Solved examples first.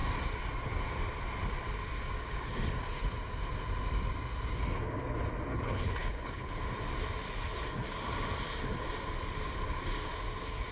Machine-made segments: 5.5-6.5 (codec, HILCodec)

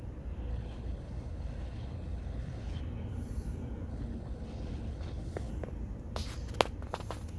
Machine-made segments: 0.5-2.8 (codec, HILCodec); 3.9-5.5

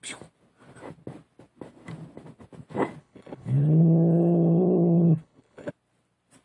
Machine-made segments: 3.0-5.7 (codec, HILCodec)

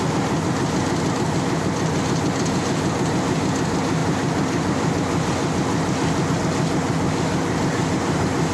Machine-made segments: none

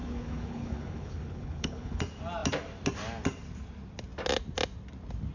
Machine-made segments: 0.0-2.0 (codec, HILCodec)

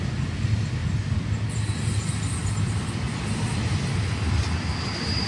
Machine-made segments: none